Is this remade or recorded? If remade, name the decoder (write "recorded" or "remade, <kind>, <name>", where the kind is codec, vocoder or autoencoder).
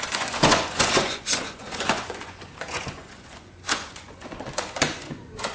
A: remade, vocoder, Vocos